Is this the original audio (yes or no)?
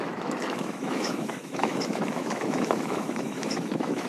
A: no